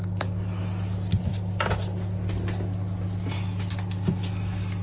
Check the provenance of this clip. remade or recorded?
recorded